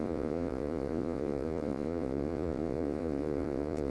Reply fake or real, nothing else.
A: fake